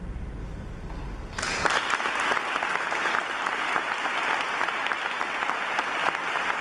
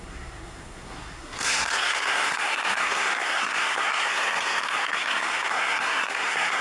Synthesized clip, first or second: second